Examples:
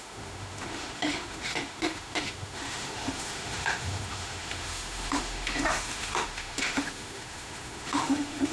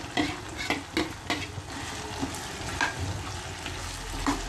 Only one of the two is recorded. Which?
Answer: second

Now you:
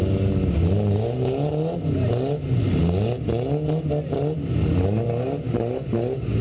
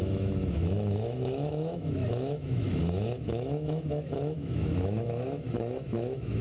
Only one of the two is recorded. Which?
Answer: first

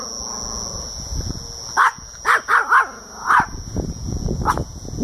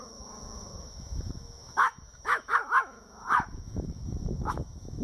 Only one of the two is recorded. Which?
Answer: first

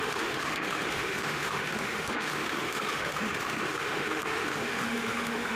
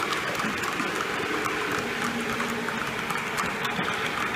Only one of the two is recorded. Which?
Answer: second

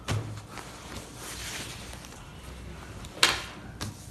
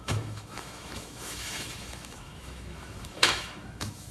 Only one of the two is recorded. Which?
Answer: first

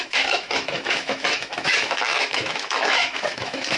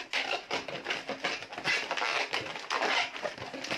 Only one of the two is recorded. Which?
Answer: second